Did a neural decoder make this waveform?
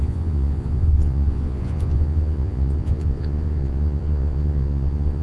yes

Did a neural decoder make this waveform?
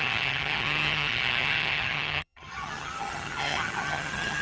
yes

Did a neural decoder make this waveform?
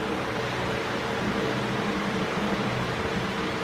yes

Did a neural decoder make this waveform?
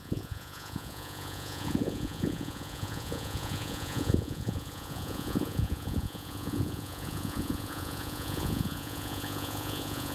yes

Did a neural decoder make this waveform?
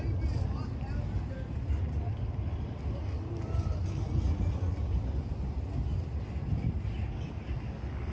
no